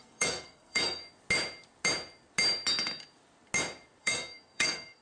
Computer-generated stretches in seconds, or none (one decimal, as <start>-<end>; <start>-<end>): 0.0-1.0; 4.0-5.0